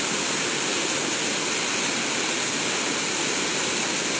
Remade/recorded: recorded